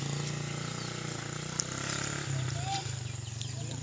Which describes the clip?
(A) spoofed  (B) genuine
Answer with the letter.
B